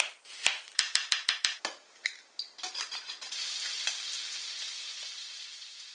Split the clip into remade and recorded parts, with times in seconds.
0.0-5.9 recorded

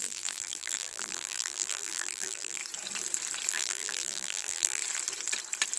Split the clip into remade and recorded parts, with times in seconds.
0.0-2.6 remade; 2.6-3.5 recorded; 3.5-4.8 remade; 4.8-5.8 recorded